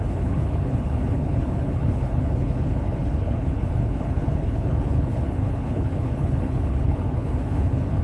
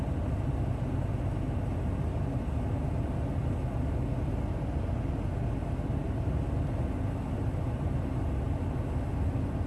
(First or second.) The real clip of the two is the second